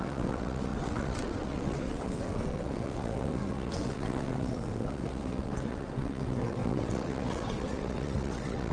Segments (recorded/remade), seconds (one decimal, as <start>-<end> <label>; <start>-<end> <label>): 0.0-8.7 remade